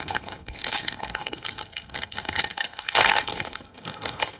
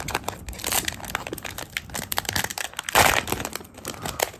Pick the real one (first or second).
second